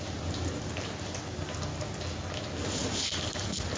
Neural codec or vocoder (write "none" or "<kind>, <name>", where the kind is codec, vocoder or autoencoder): none